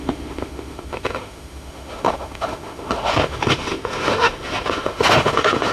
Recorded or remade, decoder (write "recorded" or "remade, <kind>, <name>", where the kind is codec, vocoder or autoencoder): remade, autoencoder, DAC-VAE